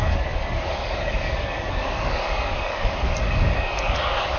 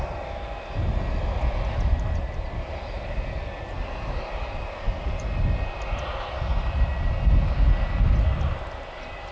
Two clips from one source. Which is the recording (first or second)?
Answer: second